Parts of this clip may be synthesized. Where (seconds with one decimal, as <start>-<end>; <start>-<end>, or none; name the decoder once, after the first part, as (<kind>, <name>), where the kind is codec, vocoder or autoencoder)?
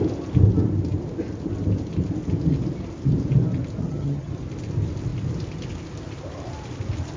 3.8-4.3 (vocoder, HiFi-GAN)